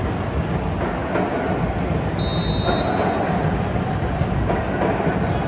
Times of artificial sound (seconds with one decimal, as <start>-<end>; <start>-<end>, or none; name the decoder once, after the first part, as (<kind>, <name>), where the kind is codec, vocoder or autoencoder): none